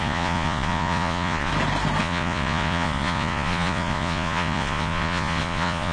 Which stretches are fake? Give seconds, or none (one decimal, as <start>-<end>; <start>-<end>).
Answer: 0.0-1.5; 2.0-5.9